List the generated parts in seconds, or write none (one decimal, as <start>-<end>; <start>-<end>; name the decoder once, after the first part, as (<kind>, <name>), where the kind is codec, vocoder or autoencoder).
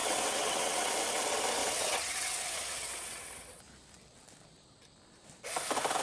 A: 0.0-0.9 (vocoder, WaveNeXt); 1.6-3.6